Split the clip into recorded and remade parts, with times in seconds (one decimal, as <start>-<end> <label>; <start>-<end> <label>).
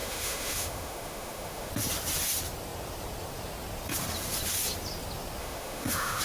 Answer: 0.0-1.7 remade; 1.7-5.4 recorded; 5.4-6.2 remade